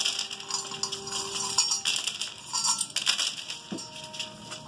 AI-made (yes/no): no